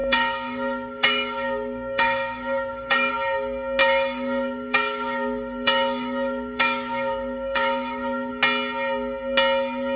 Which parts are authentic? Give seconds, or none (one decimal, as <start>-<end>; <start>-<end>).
3.1-3.8; 8.3-10.0